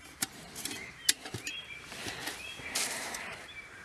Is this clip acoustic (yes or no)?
no